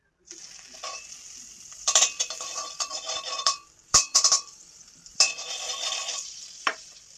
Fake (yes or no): yes